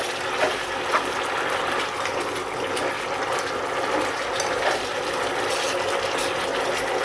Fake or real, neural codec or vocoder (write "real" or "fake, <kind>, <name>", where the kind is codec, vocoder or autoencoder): real